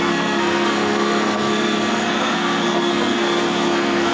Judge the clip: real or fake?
fake